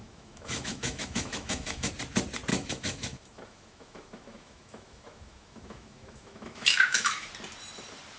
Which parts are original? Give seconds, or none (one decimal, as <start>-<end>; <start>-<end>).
1.9-2.5; 7.3-8.2